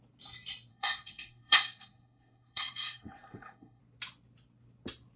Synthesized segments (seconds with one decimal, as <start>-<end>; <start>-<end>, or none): 0.7-3.8